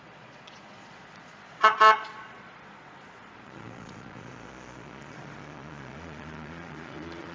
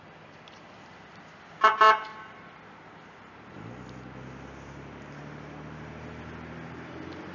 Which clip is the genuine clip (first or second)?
second